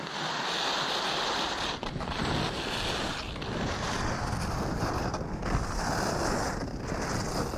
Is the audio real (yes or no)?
yes